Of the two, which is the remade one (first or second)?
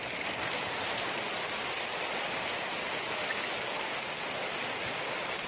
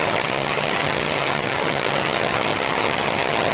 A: second